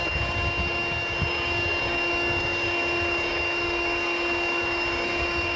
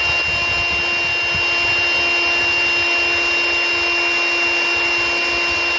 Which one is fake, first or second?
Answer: first